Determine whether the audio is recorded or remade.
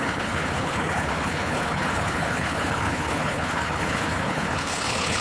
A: remade